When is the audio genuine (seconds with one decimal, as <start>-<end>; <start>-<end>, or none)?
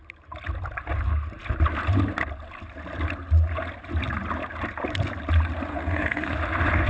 0.0-5.7; 6.3-6.9